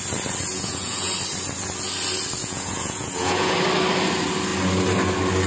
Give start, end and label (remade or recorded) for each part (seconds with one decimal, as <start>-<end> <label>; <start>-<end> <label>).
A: 0.0-0.5 recorded; 0.5-1.1 remade; 1.1-2.4 recorded; 2.4-3.5 remade; 3.5-5.5 recorded